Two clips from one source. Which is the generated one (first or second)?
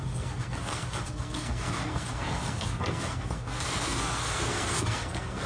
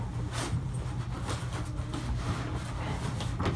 first